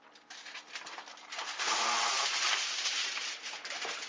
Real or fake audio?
real